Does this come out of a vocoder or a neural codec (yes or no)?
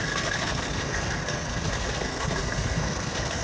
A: yes